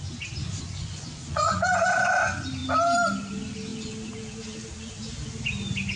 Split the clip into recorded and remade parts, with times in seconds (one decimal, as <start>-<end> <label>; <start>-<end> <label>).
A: 0.0-0.4 recorded; 0.4-1.7 remade; 1.7-6.0 recorded